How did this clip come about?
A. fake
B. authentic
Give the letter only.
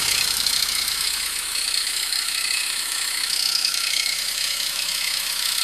A